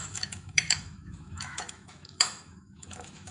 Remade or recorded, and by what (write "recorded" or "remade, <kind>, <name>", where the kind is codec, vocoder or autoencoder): remade, autoencoder, DAC-VAE